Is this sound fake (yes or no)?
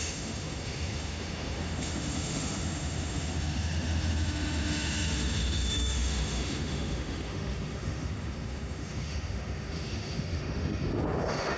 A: yes